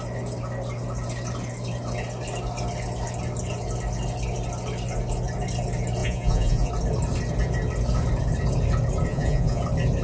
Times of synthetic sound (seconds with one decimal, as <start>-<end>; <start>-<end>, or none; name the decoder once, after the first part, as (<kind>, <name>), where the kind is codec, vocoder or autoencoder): 6.0-6.7 (vocoder, Vocos); 9.1-9.6